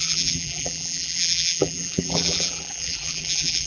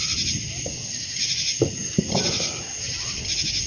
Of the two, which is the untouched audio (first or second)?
second